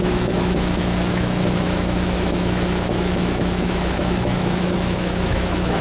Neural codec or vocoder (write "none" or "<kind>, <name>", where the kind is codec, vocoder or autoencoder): autoencoder, DAC-VAE